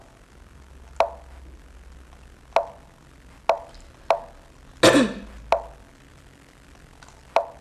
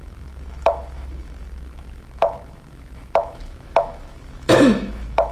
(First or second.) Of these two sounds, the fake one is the second